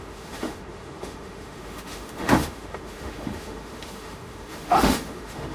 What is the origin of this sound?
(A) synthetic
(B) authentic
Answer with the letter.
A